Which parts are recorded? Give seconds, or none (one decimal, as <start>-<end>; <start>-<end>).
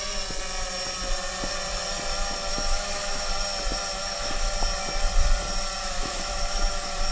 0.0-2.5; 3.3-4.0; 4.5-5.8